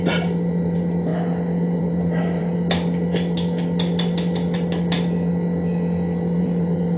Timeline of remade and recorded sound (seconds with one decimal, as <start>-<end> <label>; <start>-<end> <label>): 0.0-1.1 remade; 1.1-1.8 recorded; 1.8-2.4 remade; 2.4-6.4 recorded; 6.4-7.0 remade